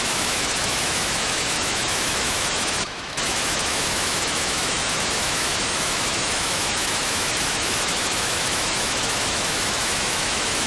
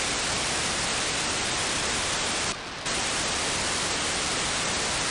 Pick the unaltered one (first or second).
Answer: second